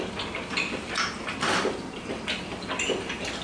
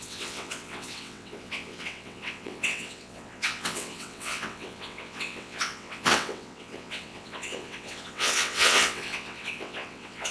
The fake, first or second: second